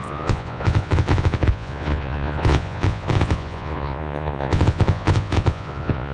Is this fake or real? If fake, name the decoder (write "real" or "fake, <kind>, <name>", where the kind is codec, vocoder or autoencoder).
fake, vocoder, Vocos